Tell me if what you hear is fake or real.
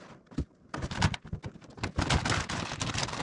real